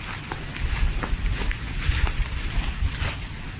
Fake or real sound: real